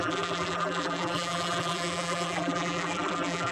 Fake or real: fake